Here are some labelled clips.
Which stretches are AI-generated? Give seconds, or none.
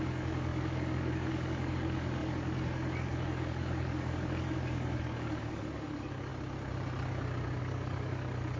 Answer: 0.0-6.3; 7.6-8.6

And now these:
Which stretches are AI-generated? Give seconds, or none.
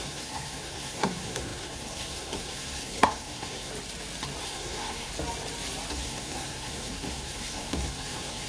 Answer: 0.0-3.7; 4.4-5.1; 5.9-8.5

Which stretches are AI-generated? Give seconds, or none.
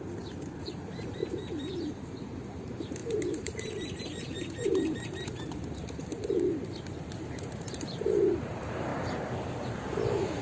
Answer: 0.0-6.1; 6.8-8.9